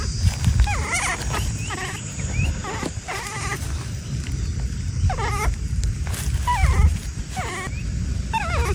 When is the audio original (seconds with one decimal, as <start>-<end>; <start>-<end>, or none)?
0.0-2.6; 6.7-8.7

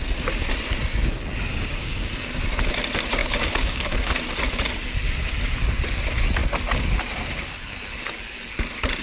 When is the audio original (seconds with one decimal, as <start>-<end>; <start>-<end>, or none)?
0.0-1.5; 2.1-3.2; 4.1-9.0

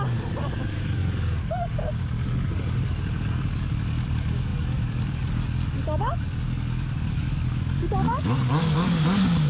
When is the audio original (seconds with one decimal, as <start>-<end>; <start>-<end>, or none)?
none

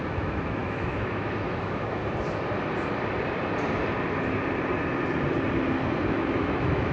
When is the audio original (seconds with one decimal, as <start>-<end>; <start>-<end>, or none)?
2.0-6.1

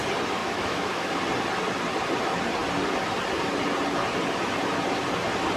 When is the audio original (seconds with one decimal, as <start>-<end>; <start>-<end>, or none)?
0.0-0.4; 1.1-5.6